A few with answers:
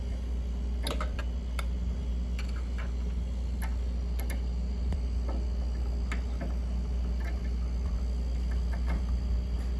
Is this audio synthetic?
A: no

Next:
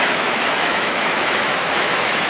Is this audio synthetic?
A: yes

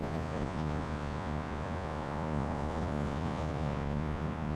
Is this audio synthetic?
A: yes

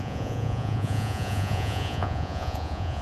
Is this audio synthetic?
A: yes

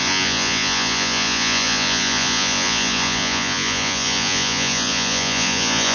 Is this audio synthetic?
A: yes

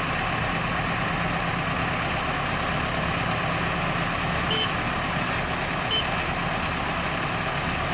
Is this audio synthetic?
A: no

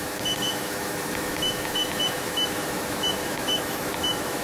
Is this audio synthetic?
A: yes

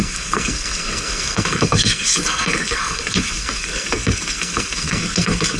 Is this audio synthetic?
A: yes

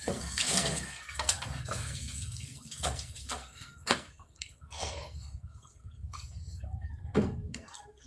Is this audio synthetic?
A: yes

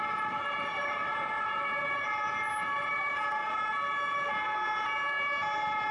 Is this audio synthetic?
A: no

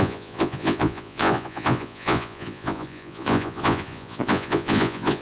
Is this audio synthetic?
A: yes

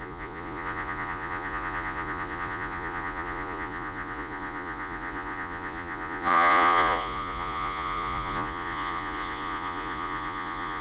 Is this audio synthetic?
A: yes